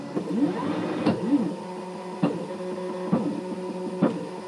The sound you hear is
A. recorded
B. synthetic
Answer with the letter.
A